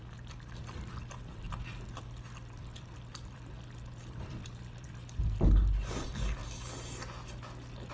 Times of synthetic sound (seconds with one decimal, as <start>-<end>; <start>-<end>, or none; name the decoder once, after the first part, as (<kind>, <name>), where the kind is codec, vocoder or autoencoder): 0.0-6.4 (vocoder, BigVGAN v2)